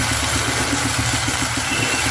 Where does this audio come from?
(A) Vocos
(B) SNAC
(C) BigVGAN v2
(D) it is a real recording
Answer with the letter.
D